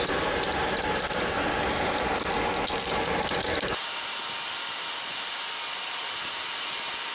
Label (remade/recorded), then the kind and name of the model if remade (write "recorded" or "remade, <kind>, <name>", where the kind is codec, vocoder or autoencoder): recorded